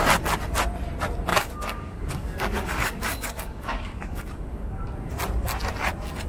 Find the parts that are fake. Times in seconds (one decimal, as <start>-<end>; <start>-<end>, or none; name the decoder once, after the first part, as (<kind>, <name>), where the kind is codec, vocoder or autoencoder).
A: 1.3-5.1 (codec, DAC)